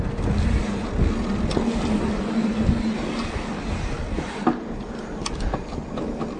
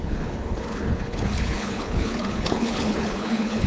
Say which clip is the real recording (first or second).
first